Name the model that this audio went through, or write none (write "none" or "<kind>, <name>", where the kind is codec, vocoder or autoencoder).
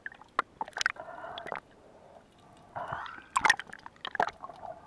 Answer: none